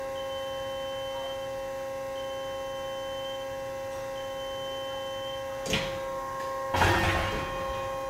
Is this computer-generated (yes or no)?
no